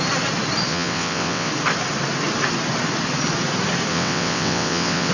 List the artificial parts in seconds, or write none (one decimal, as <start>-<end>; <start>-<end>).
0.7-1.5; 3.9-5.1